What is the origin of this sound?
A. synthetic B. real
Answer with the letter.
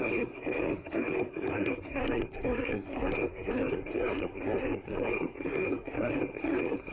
A